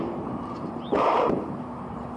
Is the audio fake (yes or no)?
yes